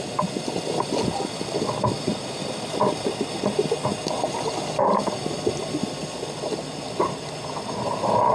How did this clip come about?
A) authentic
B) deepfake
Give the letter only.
A